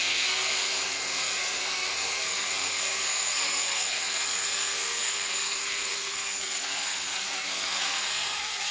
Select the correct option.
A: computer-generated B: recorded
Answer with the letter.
A